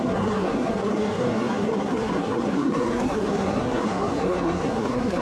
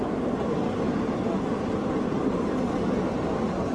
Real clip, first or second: second